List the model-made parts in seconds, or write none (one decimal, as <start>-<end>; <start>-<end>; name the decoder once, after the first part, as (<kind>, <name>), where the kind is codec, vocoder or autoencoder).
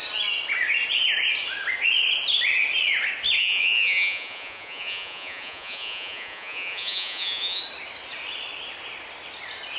3.4-7.6 (vocoder, Vocos)